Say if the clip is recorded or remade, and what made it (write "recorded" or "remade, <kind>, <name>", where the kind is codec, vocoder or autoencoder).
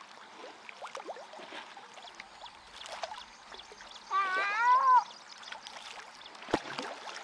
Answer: recorded